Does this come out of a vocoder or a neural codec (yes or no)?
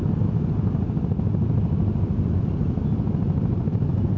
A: no